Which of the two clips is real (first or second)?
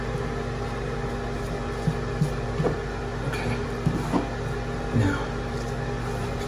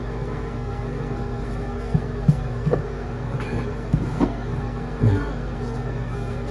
first